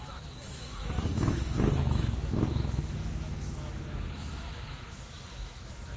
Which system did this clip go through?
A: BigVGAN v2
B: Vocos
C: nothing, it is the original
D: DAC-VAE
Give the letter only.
D